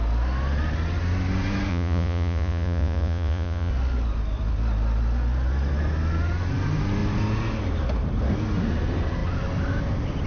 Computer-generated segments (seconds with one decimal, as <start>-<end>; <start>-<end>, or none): 1.7-3.7

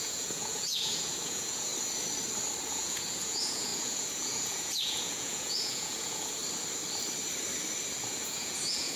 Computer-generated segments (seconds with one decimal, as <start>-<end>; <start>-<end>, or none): 0.0-1.7; 2.7-6.4; 8.2-9.0

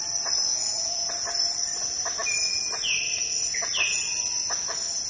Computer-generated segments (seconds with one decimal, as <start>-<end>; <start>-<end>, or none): 0.5-1.1

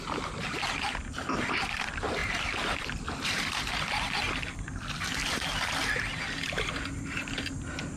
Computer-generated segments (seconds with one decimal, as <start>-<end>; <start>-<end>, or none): none

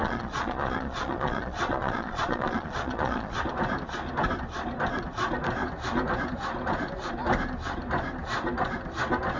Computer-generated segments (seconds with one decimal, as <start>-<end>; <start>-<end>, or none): 0.0-3.4

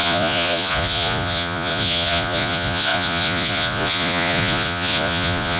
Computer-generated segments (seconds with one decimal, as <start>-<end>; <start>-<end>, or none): 0.0-5.6